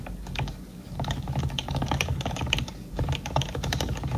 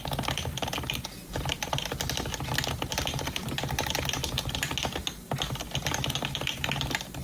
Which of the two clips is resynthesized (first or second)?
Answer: first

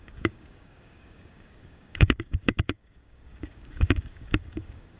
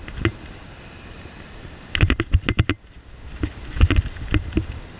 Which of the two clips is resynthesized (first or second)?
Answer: first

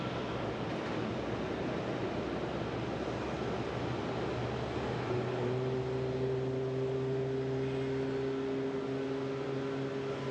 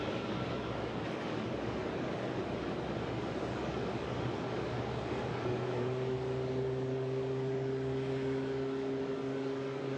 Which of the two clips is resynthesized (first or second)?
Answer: second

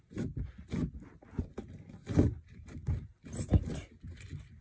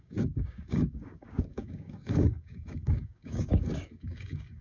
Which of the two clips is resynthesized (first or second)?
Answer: second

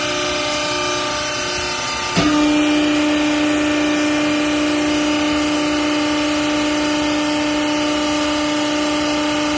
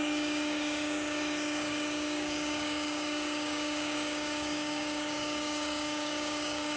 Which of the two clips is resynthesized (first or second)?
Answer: second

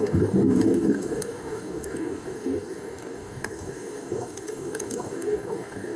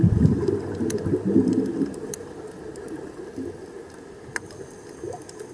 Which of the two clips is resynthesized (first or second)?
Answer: first